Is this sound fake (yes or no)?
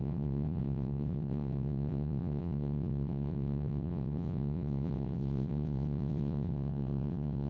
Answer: yes